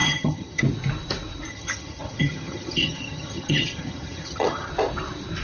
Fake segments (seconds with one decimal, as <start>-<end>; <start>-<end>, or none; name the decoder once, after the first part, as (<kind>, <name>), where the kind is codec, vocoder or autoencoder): 0.0-0.6 (vocoder, HiFi-GAN); 1.5-4.7

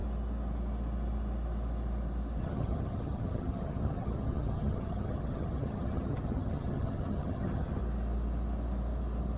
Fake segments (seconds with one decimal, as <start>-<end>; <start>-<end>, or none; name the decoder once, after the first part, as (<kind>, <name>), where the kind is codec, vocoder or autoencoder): 2.4-7.8 (vocoder, HiFi-GAN)

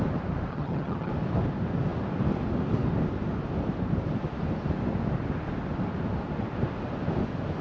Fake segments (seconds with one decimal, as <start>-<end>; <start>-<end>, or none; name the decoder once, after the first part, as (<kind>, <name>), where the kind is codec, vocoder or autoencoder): 0.5-1.1 (vocoder, HiFi-GAN)

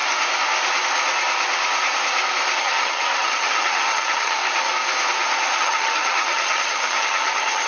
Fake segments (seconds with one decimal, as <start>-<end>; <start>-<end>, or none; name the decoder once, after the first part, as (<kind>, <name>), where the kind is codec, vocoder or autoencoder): 2.6-4.4 (vocoder, HiFi-GAN); 5.6-7.7

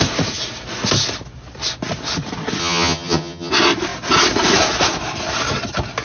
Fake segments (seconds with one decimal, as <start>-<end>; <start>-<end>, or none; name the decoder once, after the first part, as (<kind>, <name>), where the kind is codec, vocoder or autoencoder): 2.6-3.5 (vocoder, HiFi-GAN)